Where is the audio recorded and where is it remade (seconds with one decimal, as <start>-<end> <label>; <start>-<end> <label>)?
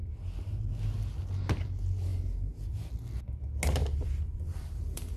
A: 0.0-3.8 recorded; 3.8-5.2 remade